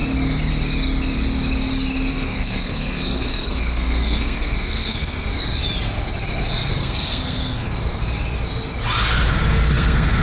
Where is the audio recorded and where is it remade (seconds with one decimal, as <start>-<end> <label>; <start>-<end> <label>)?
0.0-2.1 recorded; 2.1-5.3 remade; 5.3-6.7 recorded; 6.7-8.0 remade; 8.0-9.7 recorded; 9.7-10.2 remade